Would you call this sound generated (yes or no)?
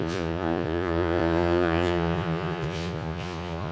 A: yes